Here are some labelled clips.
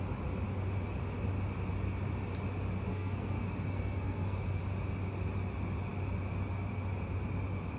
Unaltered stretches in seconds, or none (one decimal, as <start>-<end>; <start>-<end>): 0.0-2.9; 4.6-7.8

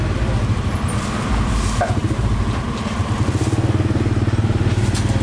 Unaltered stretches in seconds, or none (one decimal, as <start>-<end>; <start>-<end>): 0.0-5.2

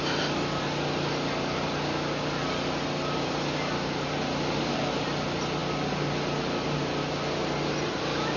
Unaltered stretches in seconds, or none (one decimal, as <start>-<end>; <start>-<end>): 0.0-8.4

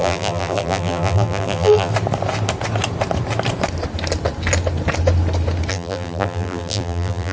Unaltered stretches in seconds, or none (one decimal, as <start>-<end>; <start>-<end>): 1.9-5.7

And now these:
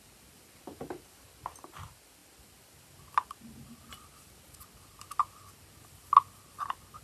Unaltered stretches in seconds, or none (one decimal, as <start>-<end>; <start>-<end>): 0.0-7.0

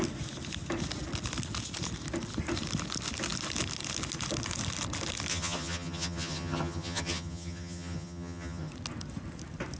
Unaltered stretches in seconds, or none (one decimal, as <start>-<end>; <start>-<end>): 0.0-5.3; 8.7-9.8